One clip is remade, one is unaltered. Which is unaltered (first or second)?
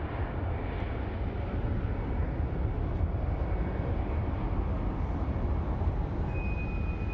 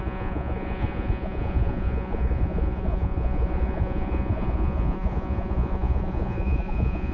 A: first